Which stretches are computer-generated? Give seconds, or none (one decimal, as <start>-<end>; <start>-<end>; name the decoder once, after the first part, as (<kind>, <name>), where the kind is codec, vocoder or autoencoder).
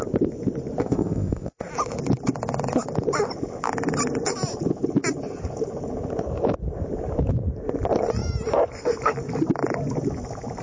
0.8-1.7 (codec, ZipCodec)